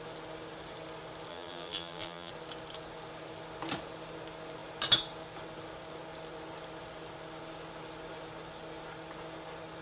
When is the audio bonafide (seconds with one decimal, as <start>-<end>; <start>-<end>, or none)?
0.0-1.3; 2.3-9.8